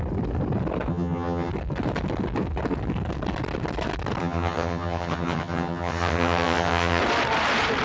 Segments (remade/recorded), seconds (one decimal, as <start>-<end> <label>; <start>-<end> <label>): 0.0-0.9 recorded; 0.9-1.5 remade; 1.5-4.2 recorded; 4.2-7.0 remade; 7.0-7.8 recorded